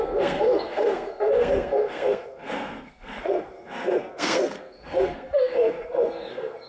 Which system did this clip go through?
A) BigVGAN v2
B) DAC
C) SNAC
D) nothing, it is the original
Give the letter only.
C